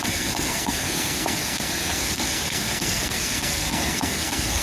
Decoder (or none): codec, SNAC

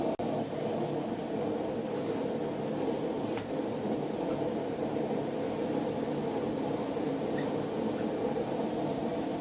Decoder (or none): none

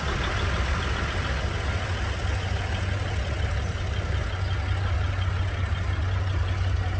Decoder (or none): none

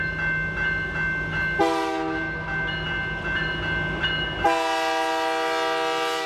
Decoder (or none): none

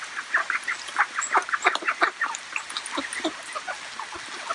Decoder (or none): none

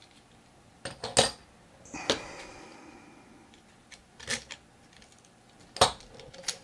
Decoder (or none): none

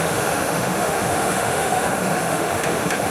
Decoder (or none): autoencoder, DAC-VAE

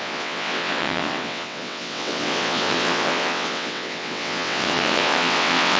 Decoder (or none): vocoder, WaveNeXt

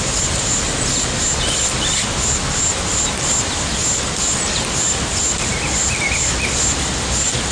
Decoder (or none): none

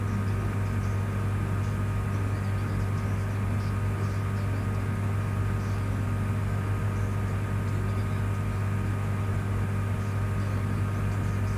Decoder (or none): none